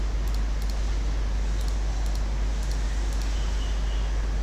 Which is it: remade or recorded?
recorded